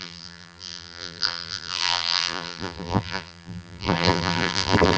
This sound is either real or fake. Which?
fake